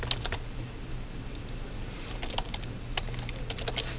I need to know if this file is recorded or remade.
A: recorded